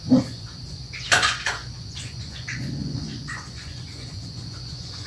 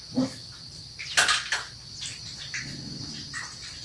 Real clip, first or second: second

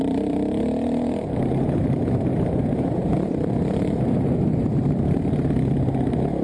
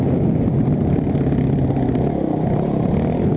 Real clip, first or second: second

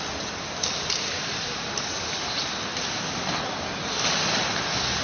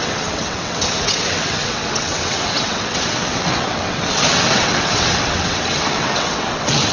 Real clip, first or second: first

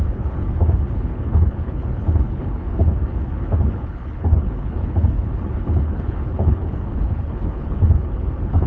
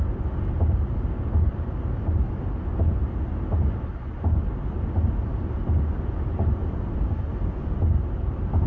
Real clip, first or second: second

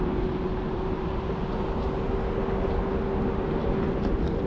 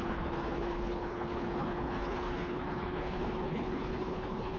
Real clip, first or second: first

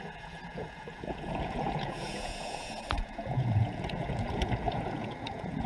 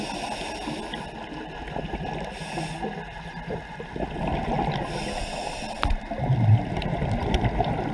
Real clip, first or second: second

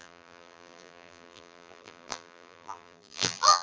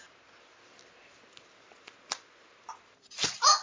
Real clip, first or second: second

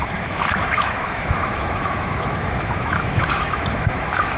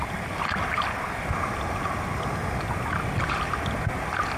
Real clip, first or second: second